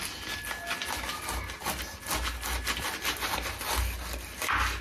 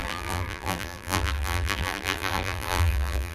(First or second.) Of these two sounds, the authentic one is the first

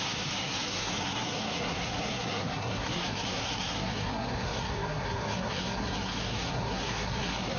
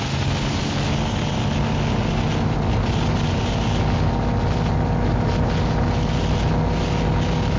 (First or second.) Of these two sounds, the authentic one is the second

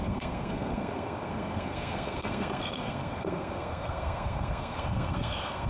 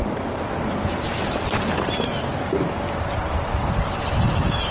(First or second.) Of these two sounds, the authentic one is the second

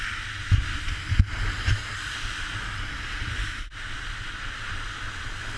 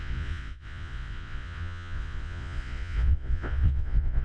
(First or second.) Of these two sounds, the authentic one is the first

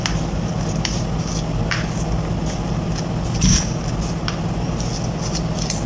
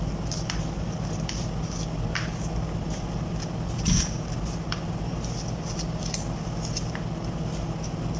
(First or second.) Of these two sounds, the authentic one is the first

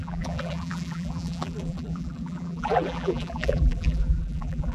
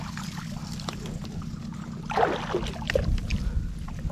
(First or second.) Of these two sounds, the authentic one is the second